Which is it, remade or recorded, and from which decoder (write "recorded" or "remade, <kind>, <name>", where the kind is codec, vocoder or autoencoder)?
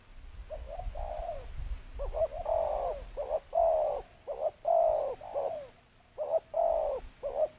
recorded